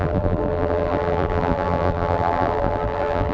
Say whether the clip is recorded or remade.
remade